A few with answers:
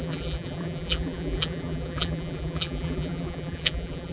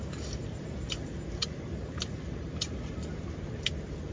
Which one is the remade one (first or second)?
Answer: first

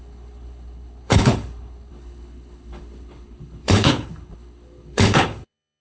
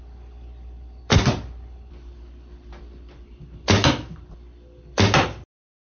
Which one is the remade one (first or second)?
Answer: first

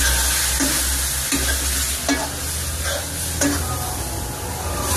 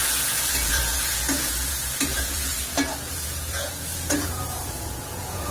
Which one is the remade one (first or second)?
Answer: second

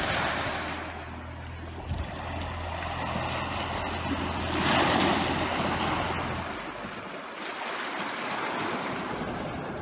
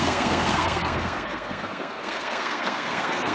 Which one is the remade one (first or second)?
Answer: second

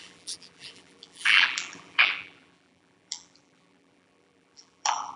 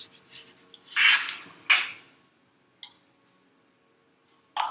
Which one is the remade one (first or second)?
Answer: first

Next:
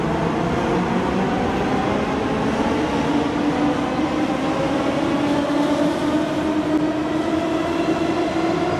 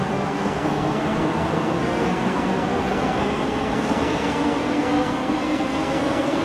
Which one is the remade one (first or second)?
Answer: second